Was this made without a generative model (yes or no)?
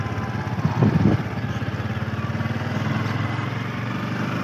yes